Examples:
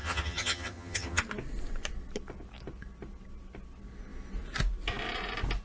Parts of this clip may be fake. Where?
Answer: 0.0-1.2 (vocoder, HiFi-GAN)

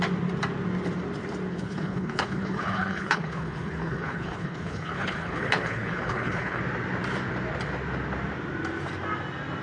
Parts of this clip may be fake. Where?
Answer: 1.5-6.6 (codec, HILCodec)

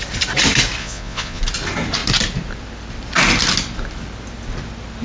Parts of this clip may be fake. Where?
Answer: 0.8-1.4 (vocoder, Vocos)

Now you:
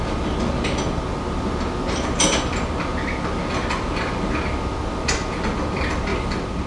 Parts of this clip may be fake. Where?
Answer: 6.1-6.7 (vocoder, BigVGAN v2)

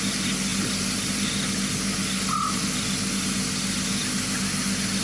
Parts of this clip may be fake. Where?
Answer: none